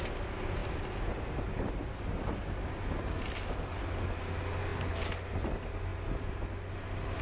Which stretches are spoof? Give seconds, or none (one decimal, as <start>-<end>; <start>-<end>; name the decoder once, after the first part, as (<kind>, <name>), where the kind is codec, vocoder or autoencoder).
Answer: none